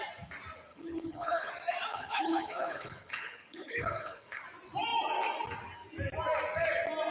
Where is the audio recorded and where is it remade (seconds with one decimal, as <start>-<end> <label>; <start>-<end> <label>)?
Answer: 0.0-0.7 recorded; 0.7-1.5 remade; 1.5-1.9 recorded; 1.9-4.4 remade; 4.4-7.1 recorded